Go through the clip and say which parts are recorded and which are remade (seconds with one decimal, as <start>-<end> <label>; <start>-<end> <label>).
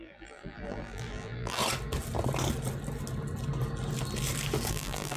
0.0-1.6 remade; 1.6-4.7 recorded; 4.7-5.2 remade